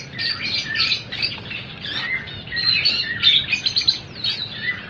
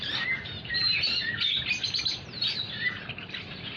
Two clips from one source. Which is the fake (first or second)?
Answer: second